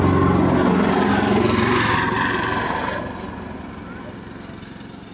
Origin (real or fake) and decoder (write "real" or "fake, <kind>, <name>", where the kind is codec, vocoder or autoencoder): real